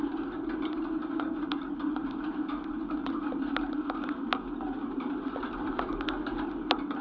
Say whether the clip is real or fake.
real